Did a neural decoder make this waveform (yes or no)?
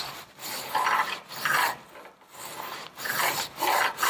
yes